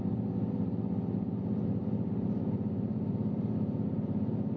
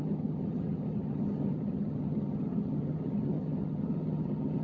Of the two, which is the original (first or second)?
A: first